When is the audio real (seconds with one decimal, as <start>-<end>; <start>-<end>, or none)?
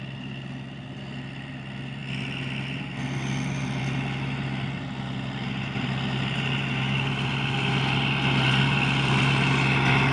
0.0-10.1